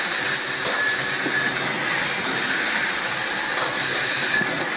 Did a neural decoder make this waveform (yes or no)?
no